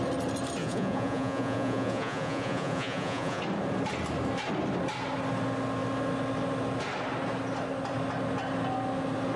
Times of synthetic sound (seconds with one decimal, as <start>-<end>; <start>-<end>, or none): 0.6-3.4